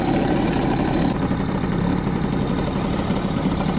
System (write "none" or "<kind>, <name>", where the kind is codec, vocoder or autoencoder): vocoder, BigVGAN v2